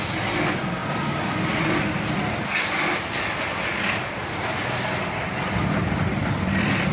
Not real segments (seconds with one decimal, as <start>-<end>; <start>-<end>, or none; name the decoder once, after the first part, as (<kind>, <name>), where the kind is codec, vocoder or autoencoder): none